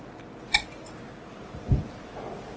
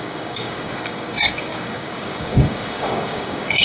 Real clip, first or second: first